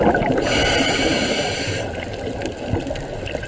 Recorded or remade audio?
recorded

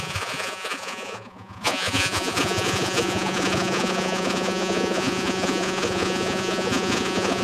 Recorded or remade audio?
remade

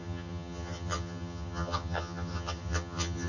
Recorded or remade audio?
remade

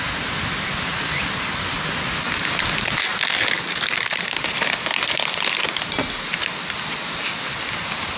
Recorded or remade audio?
recorded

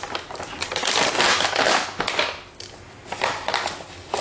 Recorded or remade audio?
recorded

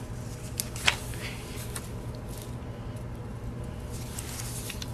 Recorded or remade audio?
recorded